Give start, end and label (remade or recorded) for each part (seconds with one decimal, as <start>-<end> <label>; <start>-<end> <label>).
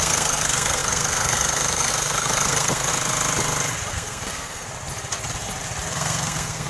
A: 0.0-2.9 remade; 2.9-3.9 recorded; 3.9-4.7 remade; 4.7-5.9 recorded; 5.9-6.7 remade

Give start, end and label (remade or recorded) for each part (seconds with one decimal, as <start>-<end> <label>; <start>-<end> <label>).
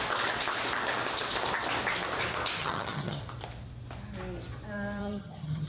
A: 0.0-2.6 recorded; 2.6-3.2 remade; 3.2-5.0 recorded; 5.0-5.7 remade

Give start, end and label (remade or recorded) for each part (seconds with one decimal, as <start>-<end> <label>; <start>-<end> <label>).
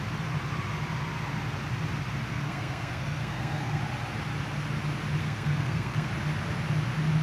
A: 0.0-2.3 recorded; 2.3-3.8 remade; 3.8-5.2 recorded; 5.2-6.1 remade; 6.1-7.2 recorded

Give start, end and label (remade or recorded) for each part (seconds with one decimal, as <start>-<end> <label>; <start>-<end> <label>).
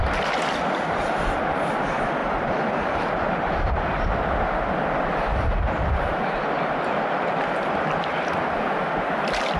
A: 0.0-2.2 recorded; 2.2-4.1 remade; 4.1-9.6 recorded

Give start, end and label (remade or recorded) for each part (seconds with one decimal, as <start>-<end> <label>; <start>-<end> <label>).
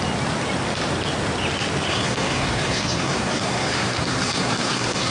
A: 0.0-1.9 recorded; 1.9-5.1 remade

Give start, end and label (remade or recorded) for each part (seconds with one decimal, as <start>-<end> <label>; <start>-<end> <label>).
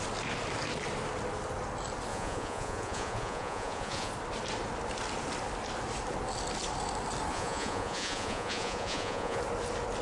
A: 0.0-2.1 recorded; 2.1-4.1 remade; 4.1-7.3 recorded; 7.3-9.4 remade; 9.4-10.0 recorded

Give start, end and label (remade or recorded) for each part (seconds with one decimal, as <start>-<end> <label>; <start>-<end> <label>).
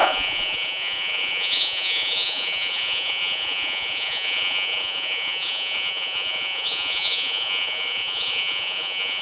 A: 0.0-9.2 remade